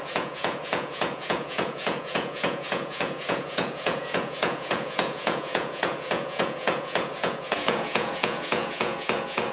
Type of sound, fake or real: fake